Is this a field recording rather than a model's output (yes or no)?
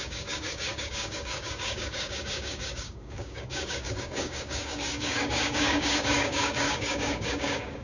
no